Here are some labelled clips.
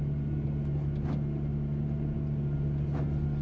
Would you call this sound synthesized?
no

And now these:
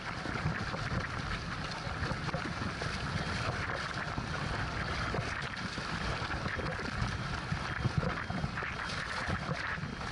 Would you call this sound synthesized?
yes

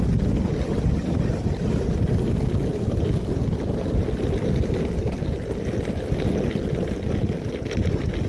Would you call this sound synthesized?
no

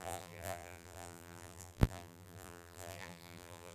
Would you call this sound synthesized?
yes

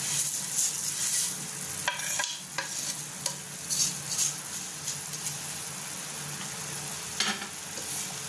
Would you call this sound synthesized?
no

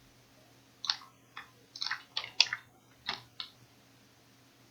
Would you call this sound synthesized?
no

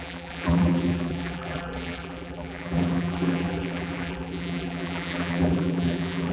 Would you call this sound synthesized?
yes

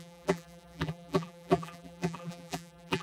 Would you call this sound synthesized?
yes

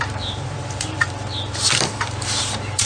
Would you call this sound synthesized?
yes